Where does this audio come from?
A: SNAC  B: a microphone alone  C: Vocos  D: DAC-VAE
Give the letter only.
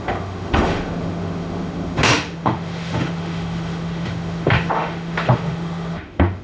D